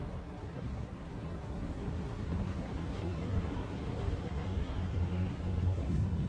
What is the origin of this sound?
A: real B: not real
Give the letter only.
B